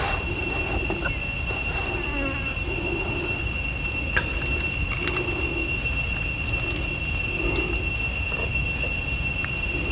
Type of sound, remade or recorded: recorded